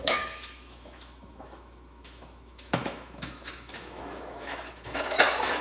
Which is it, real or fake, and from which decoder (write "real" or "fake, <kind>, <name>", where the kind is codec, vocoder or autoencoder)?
fake, autoencoder, DAC-VAE